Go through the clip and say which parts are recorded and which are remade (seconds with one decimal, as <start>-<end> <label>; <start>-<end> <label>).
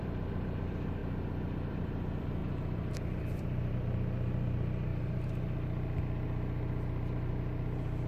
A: 0.0-1.0 remade; 1.0-1.7 recorded; 1.7-4.9 remade; 4.9-7.3 recorded; 7.3-8.1 remade